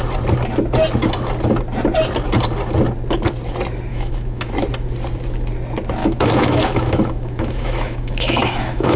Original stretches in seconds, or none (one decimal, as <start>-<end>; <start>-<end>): 0.0-3.9; 4.5-6.0